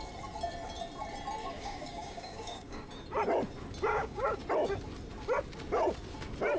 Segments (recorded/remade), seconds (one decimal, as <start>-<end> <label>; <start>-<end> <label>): 0.0-1.4 recorded; 1.4-2.9 remade; 2.9-3.9 recorded; 3.9-4.4 remade; 4.4-6.6 recorded